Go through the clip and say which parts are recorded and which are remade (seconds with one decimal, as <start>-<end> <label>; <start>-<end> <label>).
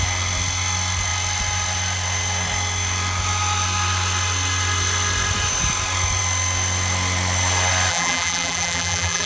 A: 0.0-7.9 recorded; 7.9-9.3 remade